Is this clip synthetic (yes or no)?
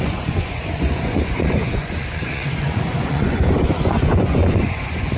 yes